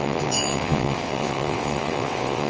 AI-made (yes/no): yes